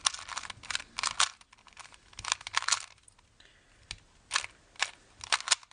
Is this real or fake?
real